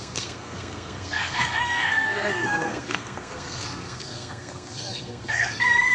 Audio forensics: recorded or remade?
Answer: remade